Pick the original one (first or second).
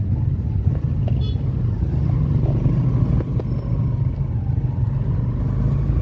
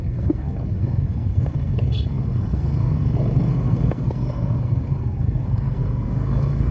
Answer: first